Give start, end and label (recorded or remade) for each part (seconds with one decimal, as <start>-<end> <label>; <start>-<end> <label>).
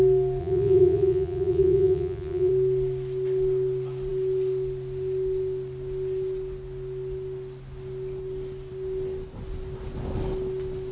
0.0-0.4 recorded; 0.4-2.5 remade; 2.5-10.9 recorded